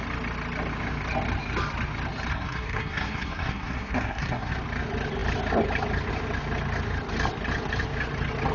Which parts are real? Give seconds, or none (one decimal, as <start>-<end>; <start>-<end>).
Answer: 0.0-2.3; 4.5-8.5